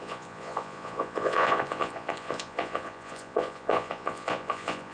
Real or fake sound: fake